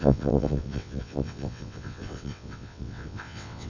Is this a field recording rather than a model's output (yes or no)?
no